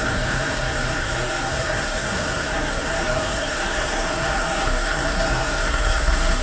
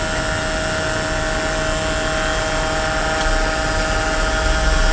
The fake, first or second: first